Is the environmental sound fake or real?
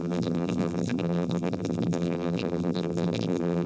fake